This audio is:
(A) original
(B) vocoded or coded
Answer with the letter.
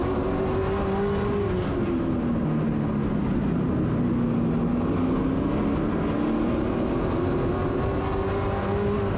A